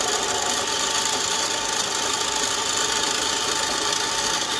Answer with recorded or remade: recorded